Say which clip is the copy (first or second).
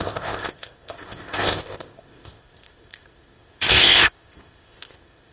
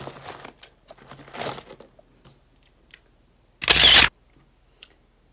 first